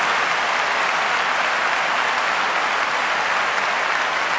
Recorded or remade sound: recorded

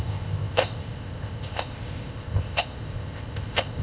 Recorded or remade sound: remade